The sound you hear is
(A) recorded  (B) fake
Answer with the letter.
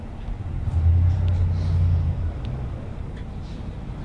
A